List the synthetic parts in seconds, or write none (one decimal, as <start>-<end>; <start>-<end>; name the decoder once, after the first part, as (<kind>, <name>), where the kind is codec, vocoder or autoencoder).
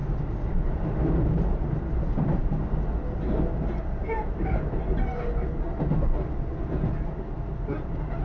none